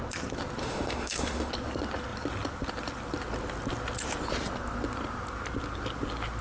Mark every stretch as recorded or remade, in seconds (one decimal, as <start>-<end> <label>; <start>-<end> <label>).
0.0-0.6 recorded; 0.6-1.5 remade; 1.5-6.4 recorded